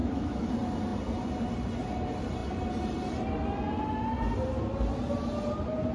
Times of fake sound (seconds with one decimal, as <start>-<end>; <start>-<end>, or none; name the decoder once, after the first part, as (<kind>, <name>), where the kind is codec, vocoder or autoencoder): 0.0-0.5 (autoencoder, DAC-VAE)